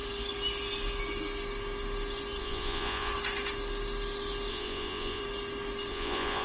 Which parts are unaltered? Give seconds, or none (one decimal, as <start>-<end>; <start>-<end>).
0.0-2.4; 3.1-4.5; 5.2-5.9